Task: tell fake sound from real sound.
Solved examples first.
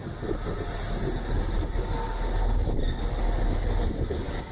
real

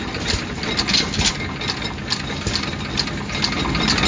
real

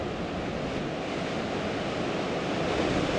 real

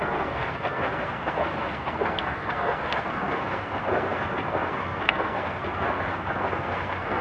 fake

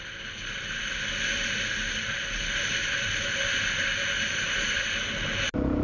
real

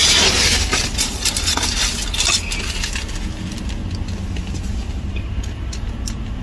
real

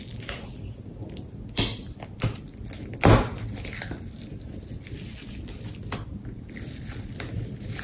real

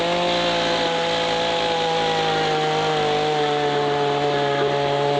real